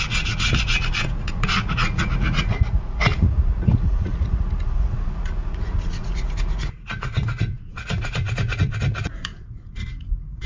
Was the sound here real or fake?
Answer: fake